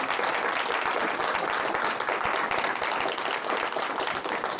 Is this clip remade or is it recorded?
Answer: recorded